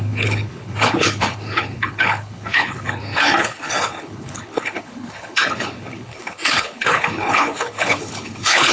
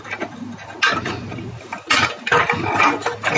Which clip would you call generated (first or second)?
first